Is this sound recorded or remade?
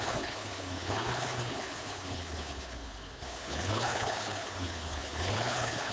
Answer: remade